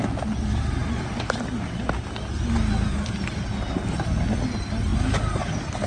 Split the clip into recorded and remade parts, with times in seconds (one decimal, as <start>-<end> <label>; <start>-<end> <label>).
0.0-5.9 recorded